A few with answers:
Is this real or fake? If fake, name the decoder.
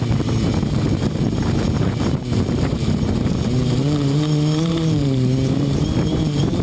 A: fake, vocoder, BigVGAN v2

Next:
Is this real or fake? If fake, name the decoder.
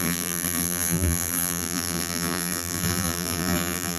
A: fake, vocoder, BigVGAN v2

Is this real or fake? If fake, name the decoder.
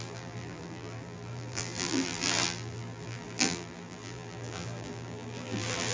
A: fake, vocoder, BigVGAN v2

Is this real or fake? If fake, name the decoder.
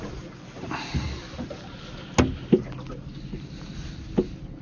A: real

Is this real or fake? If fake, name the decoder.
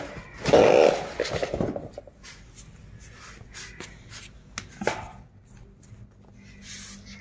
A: real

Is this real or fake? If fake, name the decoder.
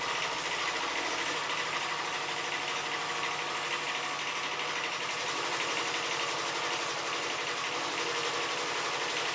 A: real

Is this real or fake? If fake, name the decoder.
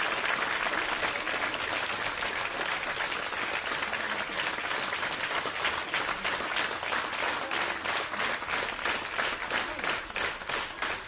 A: real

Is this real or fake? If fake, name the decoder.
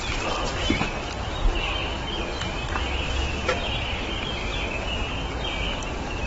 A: real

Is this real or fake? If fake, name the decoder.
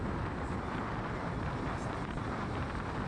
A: real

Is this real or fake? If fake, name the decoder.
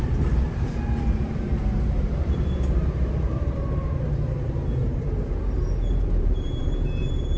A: fake, vocoder, BigVGAN v2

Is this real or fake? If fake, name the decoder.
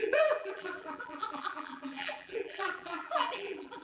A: fake, vocoder, BigVGAN v2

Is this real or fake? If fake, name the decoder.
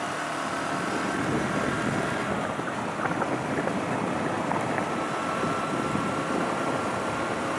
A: real